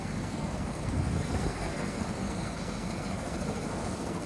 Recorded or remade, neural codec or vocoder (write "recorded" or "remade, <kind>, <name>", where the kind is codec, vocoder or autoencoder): remade, codec, SNAC